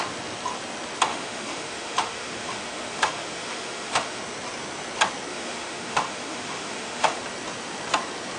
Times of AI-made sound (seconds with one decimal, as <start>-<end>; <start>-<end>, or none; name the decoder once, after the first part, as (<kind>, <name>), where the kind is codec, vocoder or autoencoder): 1.1-4.2 (autoencoder, DAC-VAE); 5.3-7.2